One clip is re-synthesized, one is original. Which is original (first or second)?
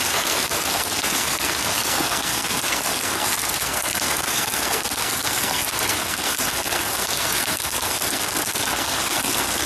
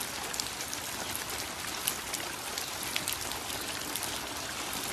second